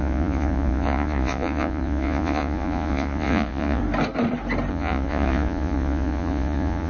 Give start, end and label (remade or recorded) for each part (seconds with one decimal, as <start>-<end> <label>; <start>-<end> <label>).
0.0-3.8 remade; 3.8-4.7 recorded; 4.7-6.9 remade